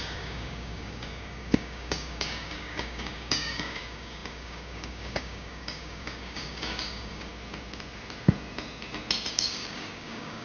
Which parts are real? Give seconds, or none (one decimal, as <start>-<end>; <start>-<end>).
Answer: 7.3-9.3